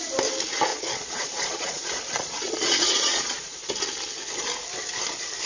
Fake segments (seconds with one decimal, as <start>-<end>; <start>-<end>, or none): 0.7-3.7